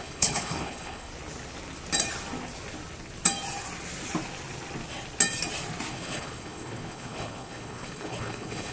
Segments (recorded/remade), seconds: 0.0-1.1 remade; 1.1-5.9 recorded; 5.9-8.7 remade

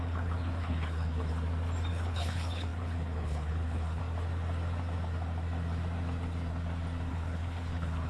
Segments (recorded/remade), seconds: 0.0-1.3 remade; 1.3-1.9 recorded; 1.9-4.0 remade; 4.0-7.1 recorded; 7.1-8.1 remade

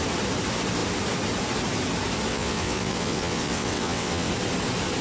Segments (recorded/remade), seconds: 0.0-2.3 recorded; 2.3-4.3 remade; 4.3-5.0 recorded

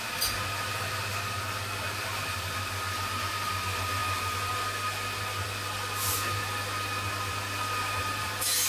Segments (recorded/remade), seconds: 0.0-8.7 recorded

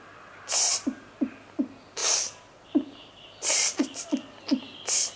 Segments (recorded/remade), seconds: 0.0-5.2 recorded